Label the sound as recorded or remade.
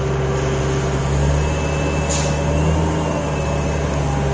recorded